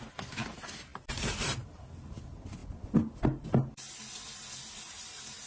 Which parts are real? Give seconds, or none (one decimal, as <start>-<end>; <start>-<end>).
0.0-0.9; 1.8-5.5